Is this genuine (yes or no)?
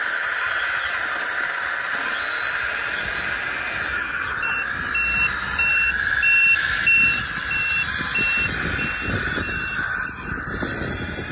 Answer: yes